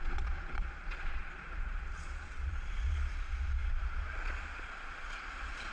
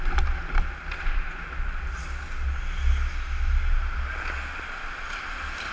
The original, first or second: second